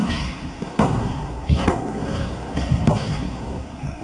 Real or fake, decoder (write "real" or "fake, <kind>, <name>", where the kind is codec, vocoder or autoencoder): fake, codec, SNAC